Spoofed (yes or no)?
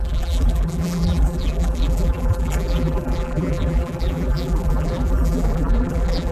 yes